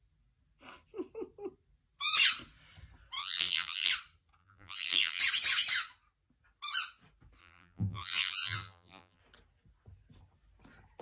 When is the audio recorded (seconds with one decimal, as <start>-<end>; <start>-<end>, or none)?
0.0-3.2; 3.9-4.4; 5.2-7.4; 9.2-11.0